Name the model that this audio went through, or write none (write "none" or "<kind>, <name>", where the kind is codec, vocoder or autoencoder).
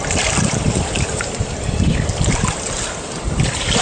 none